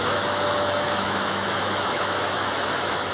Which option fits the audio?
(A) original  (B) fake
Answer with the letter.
B